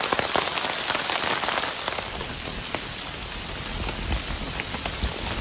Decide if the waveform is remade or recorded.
recorded